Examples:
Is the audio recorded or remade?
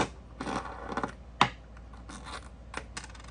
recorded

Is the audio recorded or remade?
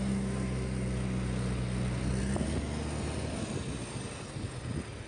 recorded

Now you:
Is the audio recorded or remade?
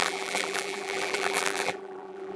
remade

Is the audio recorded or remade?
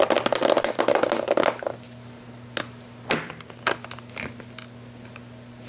recorded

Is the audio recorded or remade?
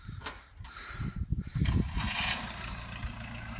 remade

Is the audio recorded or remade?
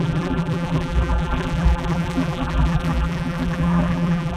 remade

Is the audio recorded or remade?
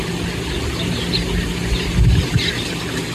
recorded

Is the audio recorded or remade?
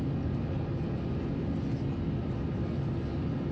recorded